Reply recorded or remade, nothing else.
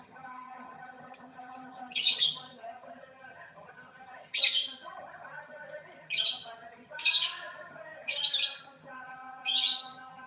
remade